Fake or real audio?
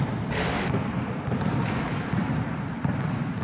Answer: real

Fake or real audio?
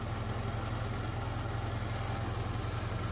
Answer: real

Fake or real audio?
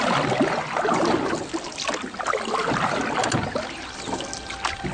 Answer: real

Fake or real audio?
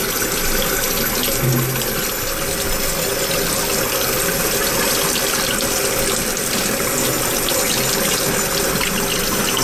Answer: real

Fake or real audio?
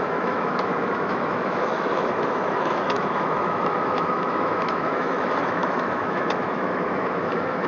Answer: fake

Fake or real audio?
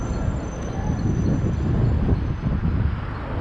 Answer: real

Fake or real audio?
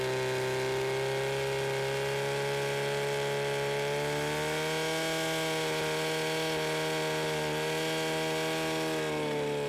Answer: real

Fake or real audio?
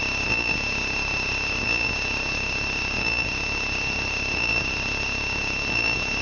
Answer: real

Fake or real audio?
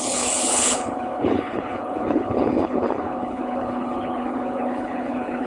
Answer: fake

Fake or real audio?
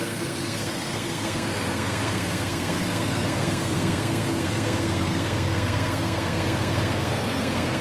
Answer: fake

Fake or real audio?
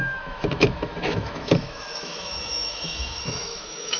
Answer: fake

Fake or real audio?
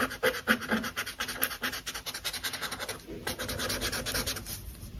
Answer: real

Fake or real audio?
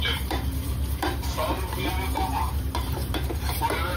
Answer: fake